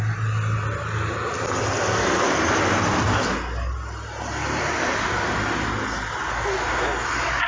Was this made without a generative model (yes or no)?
yes